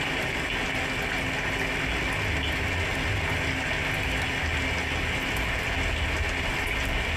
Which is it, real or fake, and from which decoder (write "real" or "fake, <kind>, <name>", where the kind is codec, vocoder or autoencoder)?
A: real